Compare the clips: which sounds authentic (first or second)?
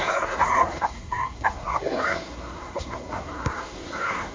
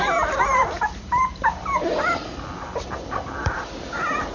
second